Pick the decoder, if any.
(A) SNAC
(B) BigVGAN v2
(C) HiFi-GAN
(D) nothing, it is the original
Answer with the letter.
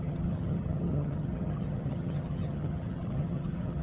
C